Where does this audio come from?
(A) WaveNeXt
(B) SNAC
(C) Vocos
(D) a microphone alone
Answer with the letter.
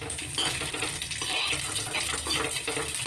D